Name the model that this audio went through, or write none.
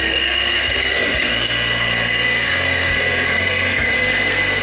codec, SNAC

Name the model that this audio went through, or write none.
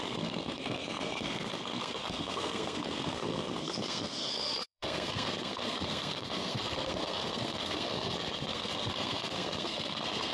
codec, SNAC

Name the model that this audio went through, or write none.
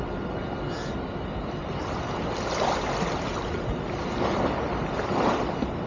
none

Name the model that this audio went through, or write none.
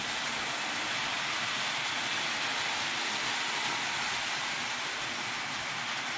none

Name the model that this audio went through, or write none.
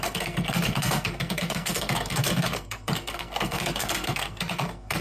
codec, SNAC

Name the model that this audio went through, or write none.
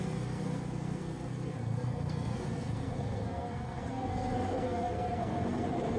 codec, SNAC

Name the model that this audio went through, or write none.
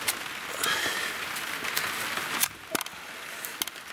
none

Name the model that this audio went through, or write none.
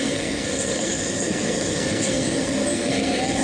codec, SNAC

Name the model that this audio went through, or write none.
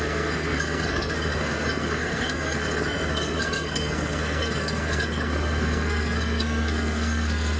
codec, SNAC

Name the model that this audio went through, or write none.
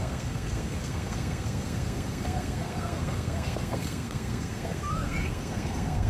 codec, SNAC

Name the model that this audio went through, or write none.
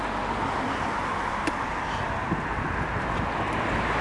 none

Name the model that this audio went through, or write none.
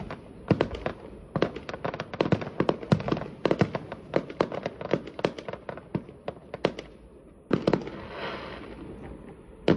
none